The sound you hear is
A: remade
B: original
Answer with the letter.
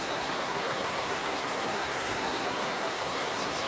A